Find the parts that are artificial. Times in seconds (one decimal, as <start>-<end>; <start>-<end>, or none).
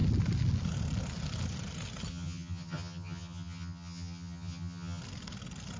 2.1-5.0